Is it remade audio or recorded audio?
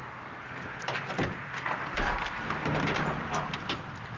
recorded